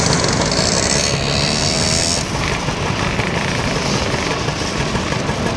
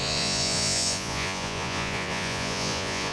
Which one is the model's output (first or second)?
second